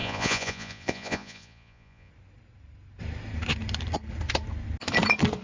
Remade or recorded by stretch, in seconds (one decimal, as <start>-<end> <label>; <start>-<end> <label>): 0.0-2.1 remade; 2.1-5.4 recorded